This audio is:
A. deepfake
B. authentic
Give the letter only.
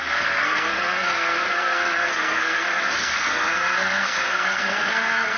A